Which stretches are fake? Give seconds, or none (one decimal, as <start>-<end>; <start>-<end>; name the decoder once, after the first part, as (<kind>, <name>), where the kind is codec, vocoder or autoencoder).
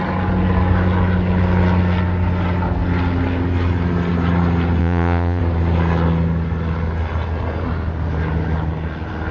4.8-5.4 (vocoder, Vocos)